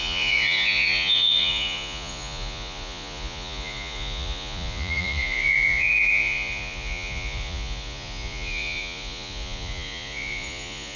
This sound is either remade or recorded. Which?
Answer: remade